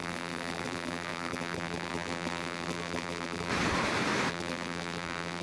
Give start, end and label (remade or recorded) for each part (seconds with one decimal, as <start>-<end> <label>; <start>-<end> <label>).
0.0-3.5 remade; 3.5-4.3 recorded; 4.3-5.4 remade